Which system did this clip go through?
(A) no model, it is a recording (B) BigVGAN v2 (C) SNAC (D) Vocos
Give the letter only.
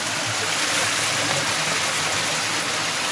A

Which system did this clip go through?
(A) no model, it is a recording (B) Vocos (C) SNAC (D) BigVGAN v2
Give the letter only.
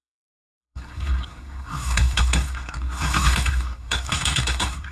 C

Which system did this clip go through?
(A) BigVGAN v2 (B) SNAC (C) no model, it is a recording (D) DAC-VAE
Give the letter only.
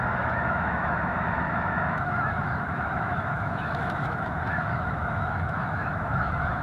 D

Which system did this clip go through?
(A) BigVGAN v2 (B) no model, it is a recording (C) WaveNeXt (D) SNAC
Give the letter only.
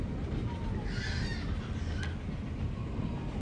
B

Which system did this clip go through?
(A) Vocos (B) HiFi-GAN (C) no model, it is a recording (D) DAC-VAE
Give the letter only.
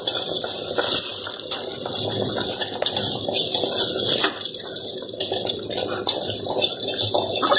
C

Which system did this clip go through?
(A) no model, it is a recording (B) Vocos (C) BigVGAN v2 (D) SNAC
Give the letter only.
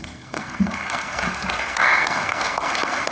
D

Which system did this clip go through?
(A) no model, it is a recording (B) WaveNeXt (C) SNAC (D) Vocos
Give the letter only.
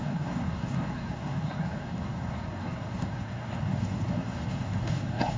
C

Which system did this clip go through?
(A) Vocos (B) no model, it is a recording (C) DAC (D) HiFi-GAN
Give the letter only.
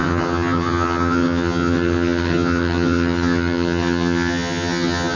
D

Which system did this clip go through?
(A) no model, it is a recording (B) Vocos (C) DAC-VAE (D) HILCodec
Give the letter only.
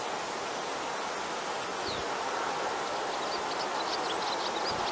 A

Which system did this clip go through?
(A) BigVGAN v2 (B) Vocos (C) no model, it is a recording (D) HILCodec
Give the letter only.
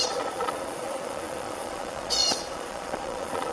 B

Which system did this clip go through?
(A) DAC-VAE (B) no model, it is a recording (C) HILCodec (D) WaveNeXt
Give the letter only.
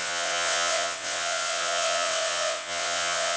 D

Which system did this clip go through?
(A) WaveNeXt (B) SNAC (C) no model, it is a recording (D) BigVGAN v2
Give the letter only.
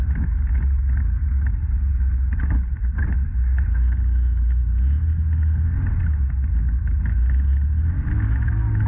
C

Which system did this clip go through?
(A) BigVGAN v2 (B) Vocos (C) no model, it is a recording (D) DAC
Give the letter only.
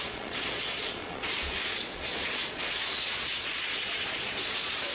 B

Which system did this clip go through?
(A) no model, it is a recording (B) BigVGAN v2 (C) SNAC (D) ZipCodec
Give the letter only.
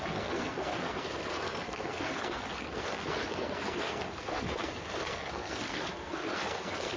C